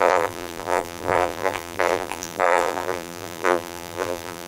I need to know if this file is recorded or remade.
remade